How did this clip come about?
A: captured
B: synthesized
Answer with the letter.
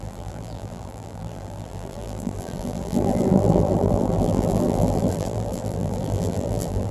B